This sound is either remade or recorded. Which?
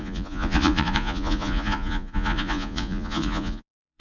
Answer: remade